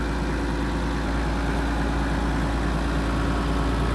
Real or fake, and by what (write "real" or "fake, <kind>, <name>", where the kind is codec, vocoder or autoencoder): real